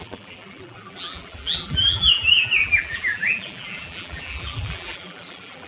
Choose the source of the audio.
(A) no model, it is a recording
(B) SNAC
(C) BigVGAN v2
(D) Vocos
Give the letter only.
C